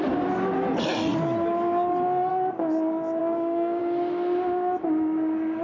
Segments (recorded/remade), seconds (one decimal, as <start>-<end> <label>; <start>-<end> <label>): 0.0-3.2 recorded; 3.2-3.8 remade; 3.8-5.6 recorded